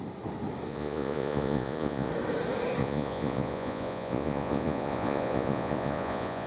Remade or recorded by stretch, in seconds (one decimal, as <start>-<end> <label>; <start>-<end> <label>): 0.0-0.7 recorded; 0.7-2.1 remade; 2.1-2.8 recorded; 2.8-6.5 remade